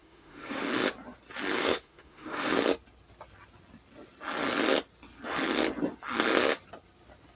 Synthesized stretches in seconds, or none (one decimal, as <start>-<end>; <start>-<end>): 0.0-0.6; 1.6-2.5